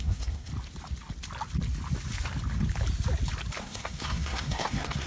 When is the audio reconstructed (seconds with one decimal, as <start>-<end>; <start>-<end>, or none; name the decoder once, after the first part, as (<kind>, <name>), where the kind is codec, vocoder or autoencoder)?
0.0-0.5 (codec, SNAC); 3.6-5.1